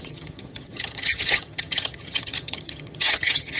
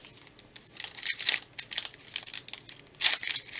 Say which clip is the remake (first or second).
first